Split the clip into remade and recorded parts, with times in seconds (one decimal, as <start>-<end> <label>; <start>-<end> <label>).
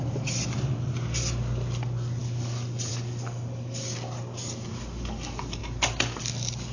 0.0-6.7 recorded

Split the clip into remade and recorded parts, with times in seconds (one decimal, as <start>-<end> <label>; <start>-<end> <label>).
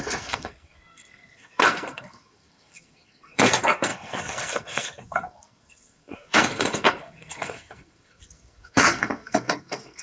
0.0-10.0 remade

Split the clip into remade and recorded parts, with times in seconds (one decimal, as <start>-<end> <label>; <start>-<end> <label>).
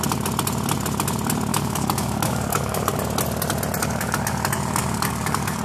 0.0-1.5 recorded; 1.5-3.0 remade; 3.0-3.8 recorded; 3.8-5.6 remade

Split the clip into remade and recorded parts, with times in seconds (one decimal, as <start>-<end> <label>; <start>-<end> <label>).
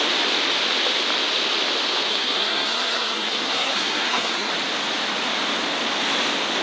0.0-2.1 recorded; 2.1-4.5 remade; 4.5-6.6 recorded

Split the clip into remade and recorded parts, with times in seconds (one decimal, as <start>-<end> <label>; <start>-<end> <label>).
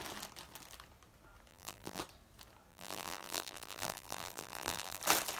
0.0-1.5 recorded; 1.5-2.0 remade; 2.0-2.7 recorded; 2.7-5.0 remade; 5.0-5.4 recorded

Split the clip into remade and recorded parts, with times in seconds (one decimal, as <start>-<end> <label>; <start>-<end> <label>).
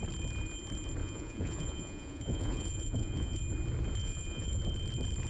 0.0-1.0 recorded; 1.0-3.4 remade; 3.4-4.0 recorded; 4.0-4.6 remade; 4.6-5.3 recorded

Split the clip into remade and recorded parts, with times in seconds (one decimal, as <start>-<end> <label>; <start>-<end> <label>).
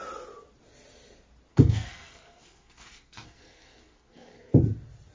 0.0-1.5 recorded; 1.5-4.6 remade; 4.6-5.1 recorded